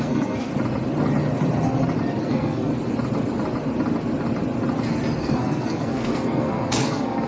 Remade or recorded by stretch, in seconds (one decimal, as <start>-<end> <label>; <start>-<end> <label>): 0.0-0.5 remade; 0.5-2.2 recorded; 2.2-2.7 remade; 2.7-5.2 recorded; 5.2-7.3 remade